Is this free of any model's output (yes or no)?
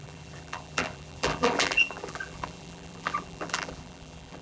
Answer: no